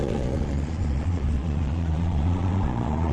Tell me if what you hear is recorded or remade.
remade